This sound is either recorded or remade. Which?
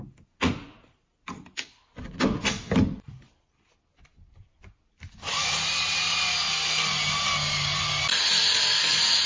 recorded